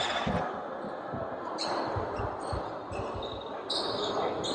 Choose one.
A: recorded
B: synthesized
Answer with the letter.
A